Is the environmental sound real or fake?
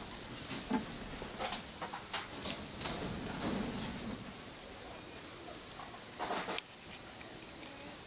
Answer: real